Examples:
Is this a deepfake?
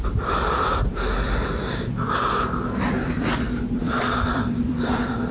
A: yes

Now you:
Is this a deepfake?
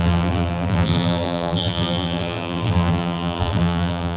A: yes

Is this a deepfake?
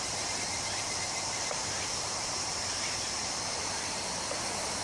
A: yes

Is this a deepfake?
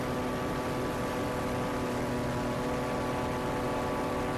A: no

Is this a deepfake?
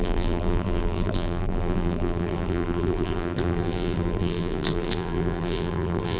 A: yes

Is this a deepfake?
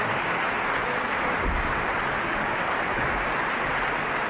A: no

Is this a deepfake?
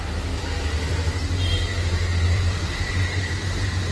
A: yes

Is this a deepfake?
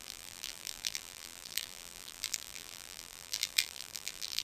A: yes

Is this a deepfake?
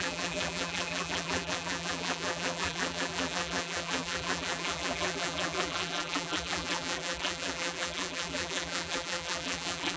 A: yes